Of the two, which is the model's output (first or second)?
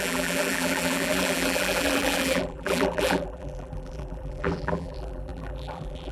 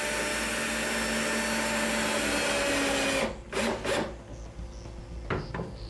first